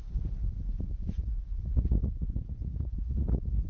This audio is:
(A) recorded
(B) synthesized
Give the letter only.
B